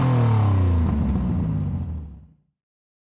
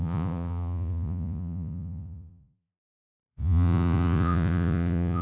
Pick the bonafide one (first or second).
first